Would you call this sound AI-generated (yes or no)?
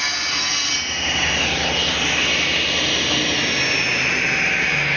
no